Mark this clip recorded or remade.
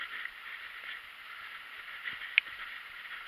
recorded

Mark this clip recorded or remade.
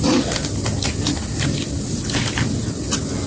recorded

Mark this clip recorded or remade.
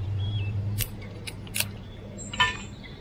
remade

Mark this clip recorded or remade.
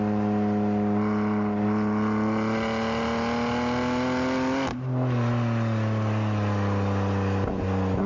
recorded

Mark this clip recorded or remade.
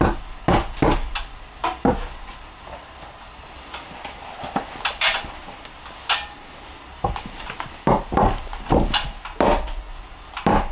recorded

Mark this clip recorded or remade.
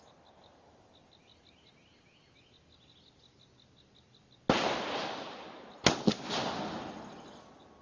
recorded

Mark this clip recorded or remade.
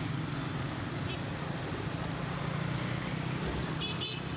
recorded